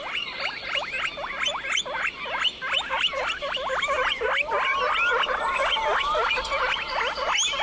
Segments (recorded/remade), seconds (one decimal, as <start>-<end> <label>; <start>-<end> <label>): 0.0-7.6 recorded